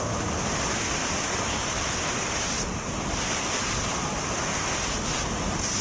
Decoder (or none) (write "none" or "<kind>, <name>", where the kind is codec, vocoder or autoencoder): none